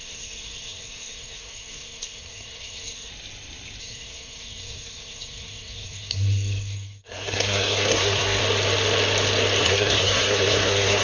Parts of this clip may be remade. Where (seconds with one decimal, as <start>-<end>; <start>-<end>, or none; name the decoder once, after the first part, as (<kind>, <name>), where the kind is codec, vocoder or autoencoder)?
0.0-3.1 (codec, SNAC); 3.8-8.4; 9.6-11.0